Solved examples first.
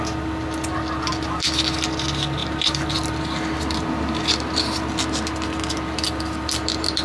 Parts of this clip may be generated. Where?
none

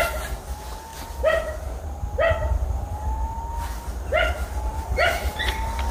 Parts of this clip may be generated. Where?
none

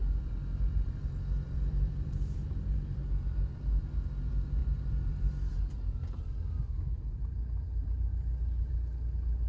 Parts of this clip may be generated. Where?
0.0-3.8 (vocoder, BigVGAN v2); 4.6-5.5

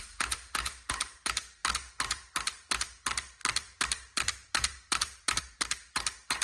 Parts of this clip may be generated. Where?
3.4-5.4 (vocoder, BigVGAN v2)

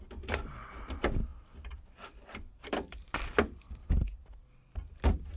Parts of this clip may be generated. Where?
1.3-4.5 (vocoder, BigVGAN v2)